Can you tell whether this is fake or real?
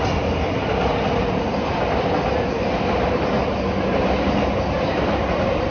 real